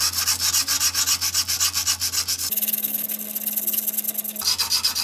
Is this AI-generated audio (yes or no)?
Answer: no